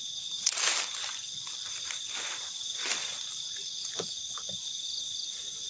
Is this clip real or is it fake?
real